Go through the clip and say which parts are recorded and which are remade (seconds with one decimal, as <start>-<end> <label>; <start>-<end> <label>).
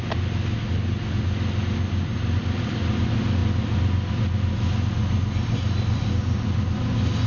0.0-7.3 recorded